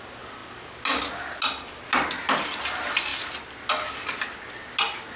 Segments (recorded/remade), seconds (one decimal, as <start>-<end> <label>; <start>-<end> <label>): 0.0-5.2 recorded